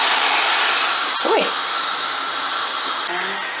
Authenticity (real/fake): real